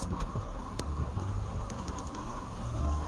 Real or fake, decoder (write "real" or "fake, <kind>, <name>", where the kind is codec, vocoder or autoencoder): fake, codec, SNAC